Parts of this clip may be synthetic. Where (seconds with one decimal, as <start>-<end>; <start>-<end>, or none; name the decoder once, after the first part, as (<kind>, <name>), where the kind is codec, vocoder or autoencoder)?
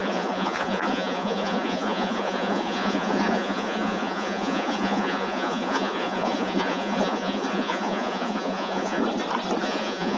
0.0-9.0 (vocoder, Vocos); 9.6-10.2